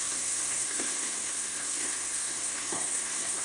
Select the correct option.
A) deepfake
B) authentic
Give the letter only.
A